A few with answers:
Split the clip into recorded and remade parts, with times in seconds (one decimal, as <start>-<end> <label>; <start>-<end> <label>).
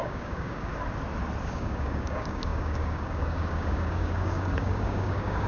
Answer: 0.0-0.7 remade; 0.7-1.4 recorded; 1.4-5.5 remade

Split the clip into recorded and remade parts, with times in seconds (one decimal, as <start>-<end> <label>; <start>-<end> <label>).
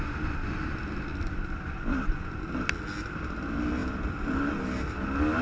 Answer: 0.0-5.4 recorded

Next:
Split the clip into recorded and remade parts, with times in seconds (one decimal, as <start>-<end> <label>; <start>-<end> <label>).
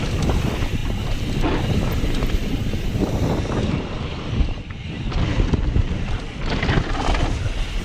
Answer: 0.0-7.8 recorded